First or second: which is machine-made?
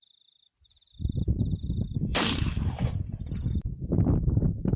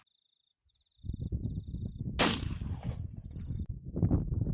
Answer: first